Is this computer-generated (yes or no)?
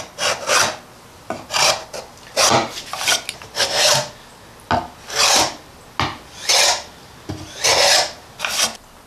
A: no